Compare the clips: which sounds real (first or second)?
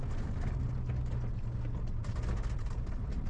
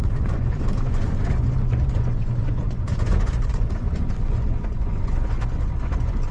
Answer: first